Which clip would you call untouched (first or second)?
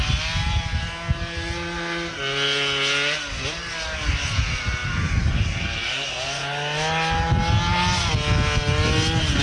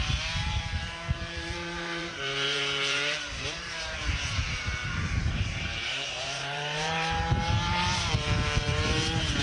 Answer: first